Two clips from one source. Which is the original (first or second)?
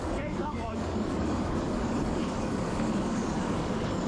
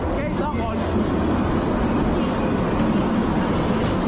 second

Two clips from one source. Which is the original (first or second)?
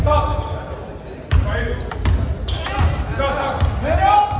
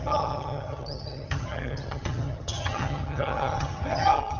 first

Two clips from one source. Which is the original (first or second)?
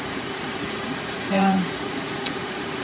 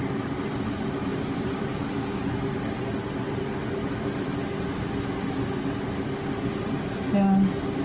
second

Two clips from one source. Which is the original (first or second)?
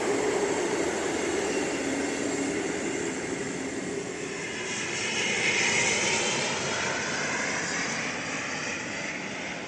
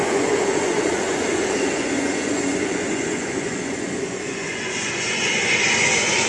first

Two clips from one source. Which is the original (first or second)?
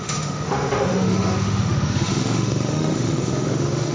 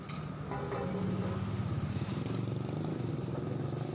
second